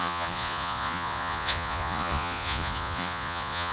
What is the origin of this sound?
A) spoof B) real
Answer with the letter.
A